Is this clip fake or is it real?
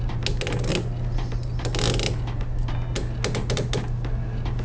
real